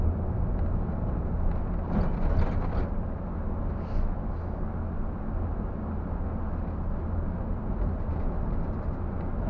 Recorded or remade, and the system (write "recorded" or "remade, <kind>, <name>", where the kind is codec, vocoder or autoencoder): recorded